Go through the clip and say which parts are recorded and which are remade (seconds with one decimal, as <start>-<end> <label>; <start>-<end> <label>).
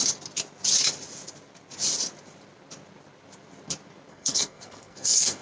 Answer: 0.0-4.1 recorded; 4.1-5.4 remade